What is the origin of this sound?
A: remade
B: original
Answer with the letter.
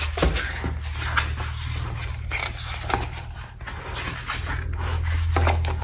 B